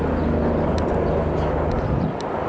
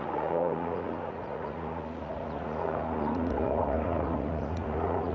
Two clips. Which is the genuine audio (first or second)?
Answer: first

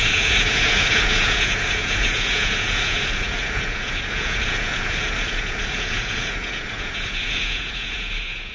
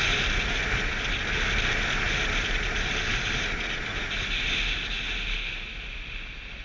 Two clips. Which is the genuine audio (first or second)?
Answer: second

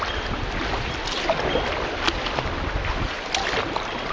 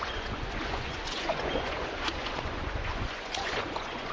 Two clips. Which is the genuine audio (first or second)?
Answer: first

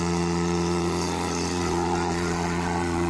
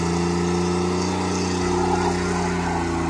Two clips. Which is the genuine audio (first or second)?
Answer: second